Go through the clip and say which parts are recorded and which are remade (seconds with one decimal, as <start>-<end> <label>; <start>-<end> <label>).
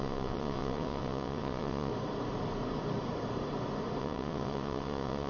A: 0.0-1.9 remade; 1.9-4.0 recorded; 4.0-5.3 remade